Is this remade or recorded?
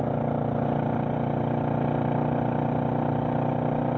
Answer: recorded